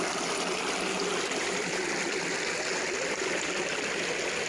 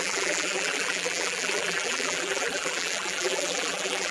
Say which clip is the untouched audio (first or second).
first